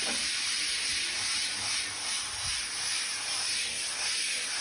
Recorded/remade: recorded